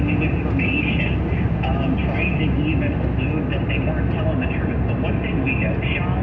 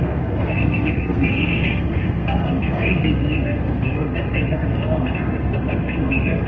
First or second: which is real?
first